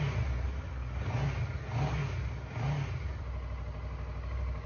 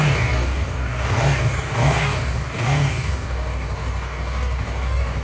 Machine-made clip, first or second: second